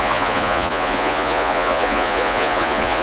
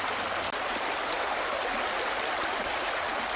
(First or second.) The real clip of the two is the second